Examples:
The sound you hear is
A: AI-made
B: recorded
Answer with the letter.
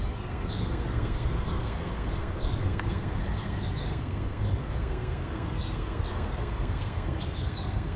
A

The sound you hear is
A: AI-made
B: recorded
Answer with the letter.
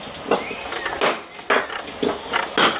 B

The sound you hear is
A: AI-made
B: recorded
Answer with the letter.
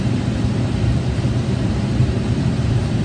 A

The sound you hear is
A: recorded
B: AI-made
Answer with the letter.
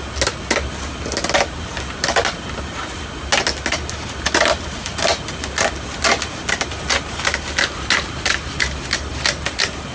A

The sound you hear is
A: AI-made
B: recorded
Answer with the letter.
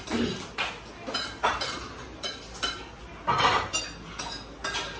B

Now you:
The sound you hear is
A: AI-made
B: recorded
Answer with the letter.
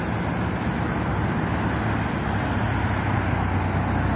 B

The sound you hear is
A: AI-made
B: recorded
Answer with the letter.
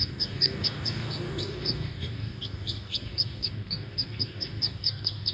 A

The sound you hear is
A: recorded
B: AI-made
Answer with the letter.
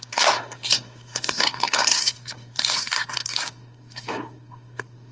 B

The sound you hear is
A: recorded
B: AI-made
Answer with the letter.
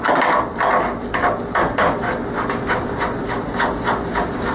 A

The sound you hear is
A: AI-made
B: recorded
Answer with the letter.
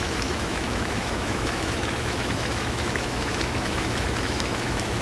A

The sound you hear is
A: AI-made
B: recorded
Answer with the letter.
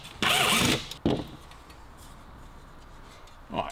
B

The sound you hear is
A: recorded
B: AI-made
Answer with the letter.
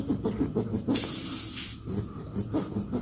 A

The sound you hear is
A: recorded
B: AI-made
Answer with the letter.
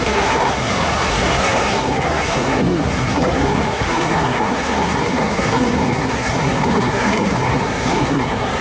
B